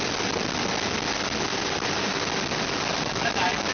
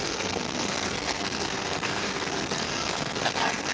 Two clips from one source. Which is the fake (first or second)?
second